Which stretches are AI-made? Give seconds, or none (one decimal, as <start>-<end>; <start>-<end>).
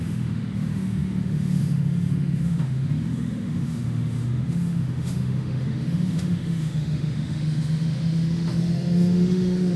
0.0-9.8